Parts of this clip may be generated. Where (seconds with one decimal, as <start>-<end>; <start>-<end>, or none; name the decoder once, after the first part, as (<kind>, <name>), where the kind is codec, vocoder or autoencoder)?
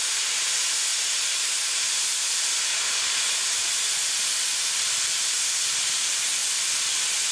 none